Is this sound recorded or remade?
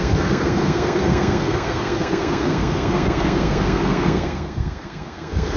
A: remade